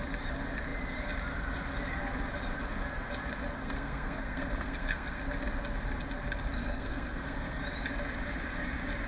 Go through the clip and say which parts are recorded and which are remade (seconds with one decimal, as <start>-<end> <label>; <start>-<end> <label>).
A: 0.0-3.6 recorded; 3.6-5.2 remade; 5.2-6.6 recorded; 6.6-7.6 remade; 7.6-9.1 recorded